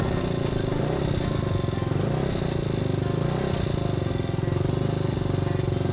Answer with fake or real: real